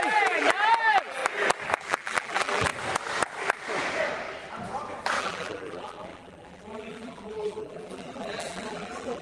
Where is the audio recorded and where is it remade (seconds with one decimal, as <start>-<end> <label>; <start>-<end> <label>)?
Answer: 0.0-1.2 remade; 1.2-1.9 recorded; 1.9-2.7 remade; 2.7-5.2 recorded; 5.2-9.2 remade

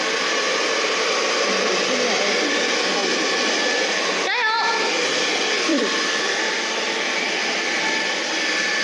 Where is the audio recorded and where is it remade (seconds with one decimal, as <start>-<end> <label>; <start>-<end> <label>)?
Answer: 0.0-5.7 recorded; 5.7-8.8 remade

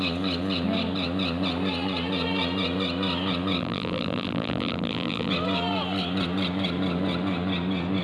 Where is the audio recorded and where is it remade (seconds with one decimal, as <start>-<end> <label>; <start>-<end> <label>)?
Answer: 0.0-3.6 recorded; 3.6-5.3 remade; 5.3-8.0 recorded

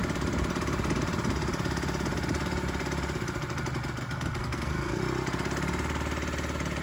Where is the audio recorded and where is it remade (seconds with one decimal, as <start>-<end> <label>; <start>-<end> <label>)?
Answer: 0.0-4.0 recorded; 4.0-5.0 remade; 5.0-6.8 recorded

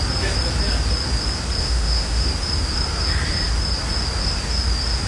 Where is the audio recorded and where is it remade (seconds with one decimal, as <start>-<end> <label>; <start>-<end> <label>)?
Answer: 0.0-1.6 recorded; 1.6-2.3 remade; 2.3-5.1 recorded

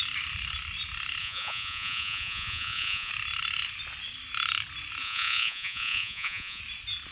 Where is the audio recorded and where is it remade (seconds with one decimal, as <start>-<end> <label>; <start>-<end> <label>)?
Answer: 0.0-1.2 recorded; 1.2-3.1 remade; 3.1-5.0 recorded; 5.0-6.6 remade; 6.6-7.1 recorded